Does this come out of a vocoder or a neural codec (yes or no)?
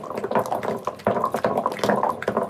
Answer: no